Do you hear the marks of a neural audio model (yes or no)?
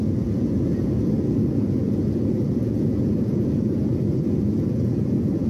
yes